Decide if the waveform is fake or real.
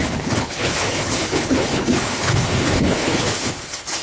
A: fake